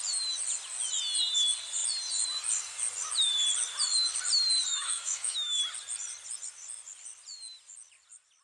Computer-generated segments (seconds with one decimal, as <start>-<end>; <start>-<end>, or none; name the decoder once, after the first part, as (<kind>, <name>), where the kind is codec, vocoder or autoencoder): 4.7-5.6 (autoencoder, DAC-VAE)